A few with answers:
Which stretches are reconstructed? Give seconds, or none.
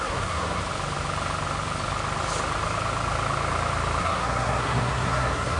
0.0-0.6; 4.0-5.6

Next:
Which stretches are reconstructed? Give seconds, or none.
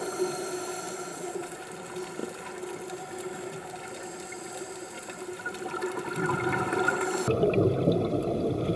1.1-1.6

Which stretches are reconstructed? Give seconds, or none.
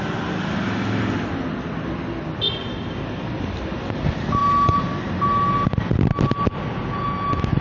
none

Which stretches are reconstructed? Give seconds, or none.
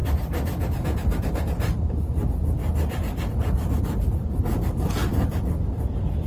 5.0-6.3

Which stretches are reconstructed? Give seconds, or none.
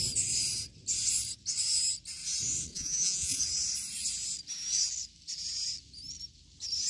2.7-3.4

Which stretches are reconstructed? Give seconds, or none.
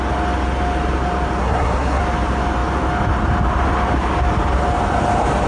1.4-2.0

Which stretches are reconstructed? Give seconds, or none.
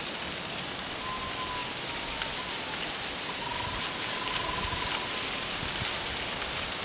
none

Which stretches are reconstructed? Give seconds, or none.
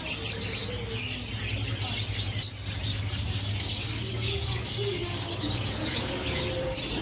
2.9-6.4